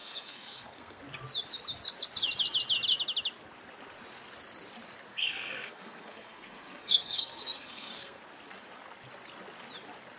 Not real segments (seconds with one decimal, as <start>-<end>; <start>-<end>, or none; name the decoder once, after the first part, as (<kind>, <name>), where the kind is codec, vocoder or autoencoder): 0.0-1.0 (codec, SNAC); 5.1-8.2